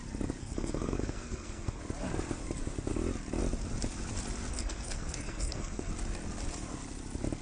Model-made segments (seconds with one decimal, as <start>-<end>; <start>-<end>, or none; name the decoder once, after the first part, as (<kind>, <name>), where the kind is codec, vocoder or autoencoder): 0.4-1.8 (codec, SNAC); 4.5-5.9